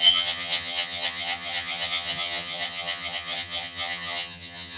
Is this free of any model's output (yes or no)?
no